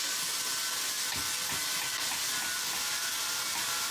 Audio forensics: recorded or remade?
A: recorded